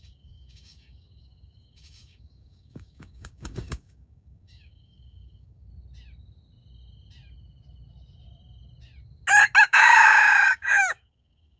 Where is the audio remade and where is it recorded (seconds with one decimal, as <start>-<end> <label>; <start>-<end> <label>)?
0.0-5.7 remade; 5.7-9.6 recorded; 9.6-11.6 remade

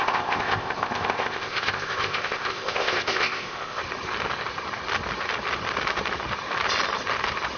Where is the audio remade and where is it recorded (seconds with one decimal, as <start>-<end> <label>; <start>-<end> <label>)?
0.0-3.8 remade; 3.8-7.6 recorded

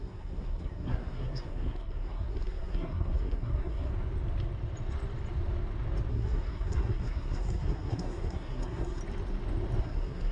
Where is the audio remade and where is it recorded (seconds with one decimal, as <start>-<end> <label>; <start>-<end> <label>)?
0.0-3.9 remade; 3.9-6.1 recorded; 6.1-9.0 remade; 9.0-9.8 recorded; 9.8-10.3 remade

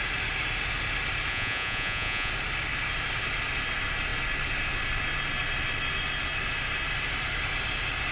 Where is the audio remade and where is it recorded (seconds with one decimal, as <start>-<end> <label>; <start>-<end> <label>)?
0.0-1.3 recorded; 1.3-2.3 remade; 2.3-8.1 recorded

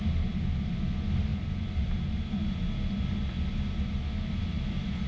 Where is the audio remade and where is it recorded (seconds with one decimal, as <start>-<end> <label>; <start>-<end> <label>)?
0.0-5.1 recorded

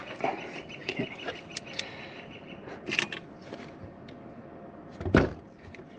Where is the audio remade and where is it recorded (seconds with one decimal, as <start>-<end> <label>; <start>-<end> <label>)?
0.0-6.0 recorded

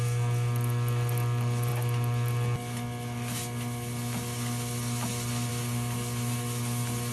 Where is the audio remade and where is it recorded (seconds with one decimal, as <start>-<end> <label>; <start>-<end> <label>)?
0.0-7.1 recorded